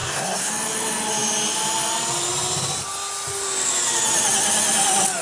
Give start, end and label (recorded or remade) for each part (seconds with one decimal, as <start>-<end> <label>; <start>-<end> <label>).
0.0-0.5 remade; 0.5-5.2 recorded

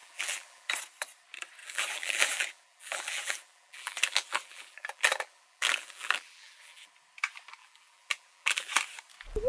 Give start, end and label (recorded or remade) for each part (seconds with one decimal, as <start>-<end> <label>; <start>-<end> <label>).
0.0-0.7 remade; 0.7-1.6 recorded; 1.6-6.9 remade; 6.9-7.6 recorded; 7.6-8.7 remade; 8.7-9.5 recorded

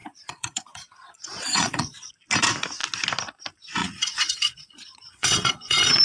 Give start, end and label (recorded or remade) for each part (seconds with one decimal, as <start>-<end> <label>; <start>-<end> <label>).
0.0-2.1 remade; 2.1-3.8 recorded; 3.8-6.0 remade

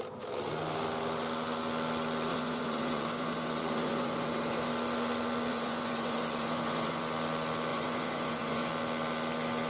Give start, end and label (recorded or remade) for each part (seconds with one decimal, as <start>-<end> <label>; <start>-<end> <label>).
0.0-2.3 recorded; 2.3-4.7 remade; 4.7-5.5 recorded; 5.5-7.0 remade; 7.0-7.7 recorded; 7.7-8.7 remade; 8.7-9.7 recorded

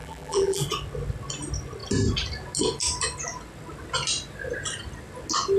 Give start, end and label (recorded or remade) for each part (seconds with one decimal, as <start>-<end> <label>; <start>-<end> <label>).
0.0-0.6 remade; 0.6-5.6 recorded

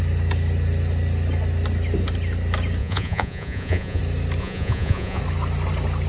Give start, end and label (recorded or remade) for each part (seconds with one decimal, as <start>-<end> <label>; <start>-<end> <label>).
0.0-2.8 recorded; 2.8-4.0 remade; 4.0-4.4 recorded; 4.4-5.2 remade; 5.2-6.1 recorded

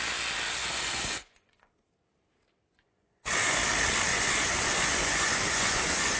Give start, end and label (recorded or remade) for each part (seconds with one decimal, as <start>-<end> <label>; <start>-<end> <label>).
0.0-0.6 recorded; 0.6-1.7 remade; 1.7-2.7 recorded; 2.7-3.6 remade; 3.6-4.1 recorded; 4.1-6.2 remade